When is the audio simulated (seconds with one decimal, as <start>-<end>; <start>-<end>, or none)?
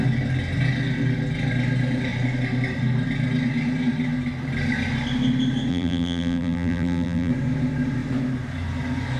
5.7-7.3